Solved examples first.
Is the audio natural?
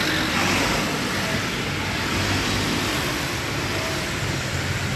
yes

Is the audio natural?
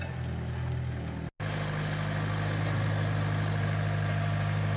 yes